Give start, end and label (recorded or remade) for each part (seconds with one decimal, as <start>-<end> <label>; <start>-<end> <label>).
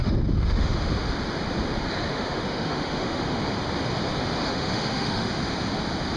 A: 0.0-0.8 remade; 0.8-2.1 recorded; 2.1-3.4 remade; 3.4-4.4 recorded; 4.4-5.3 remade; 5.3-6.2 recorded